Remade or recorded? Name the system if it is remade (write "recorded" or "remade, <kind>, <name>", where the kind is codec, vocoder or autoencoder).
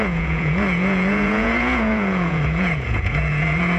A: remade, vocoder, Vocos